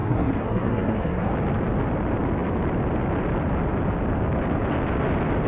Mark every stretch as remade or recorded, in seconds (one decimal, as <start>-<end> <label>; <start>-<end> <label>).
0.0-1.3 remade; 1.3-5.5 recorded